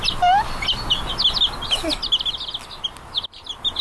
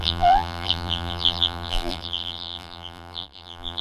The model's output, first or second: second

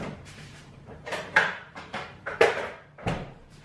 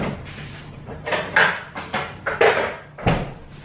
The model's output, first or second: first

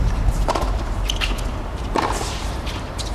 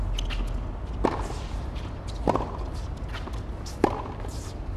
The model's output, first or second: first